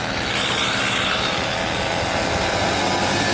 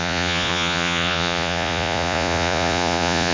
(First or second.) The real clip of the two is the first